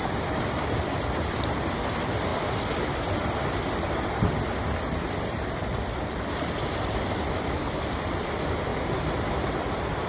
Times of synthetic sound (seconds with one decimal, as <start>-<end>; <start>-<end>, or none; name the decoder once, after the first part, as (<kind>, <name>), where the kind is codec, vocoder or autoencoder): 0.0-8.7 (vocoder, BigVGAN v2)